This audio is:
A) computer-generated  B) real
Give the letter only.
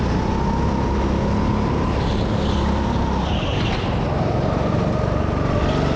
B